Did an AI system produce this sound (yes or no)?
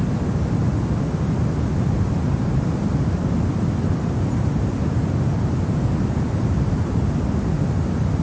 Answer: no